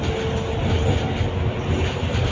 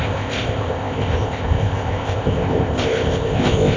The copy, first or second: second